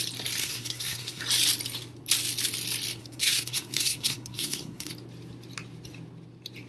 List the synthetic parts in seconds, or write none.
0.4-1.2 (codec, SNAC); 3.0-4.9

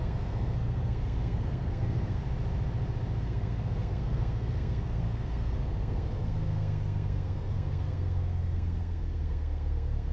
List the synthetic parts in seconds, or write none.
0.0-2.2 (codec, SNAC); 3.2-10.1

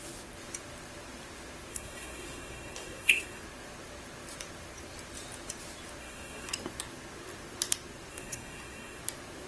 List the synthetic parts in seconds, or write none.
1.7-3.4 (codec, SNAC); 6.0-6.5; 8.1-9.0

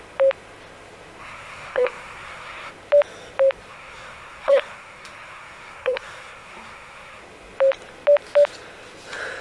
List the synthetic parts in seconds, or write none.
1.2-2.7 (codec, SNAC); 3.7-7.2

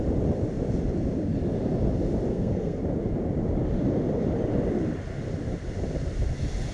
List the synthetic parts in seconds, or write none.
2.3-2.8 (codec, SNAC)